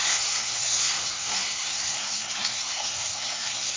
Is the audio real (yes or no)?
no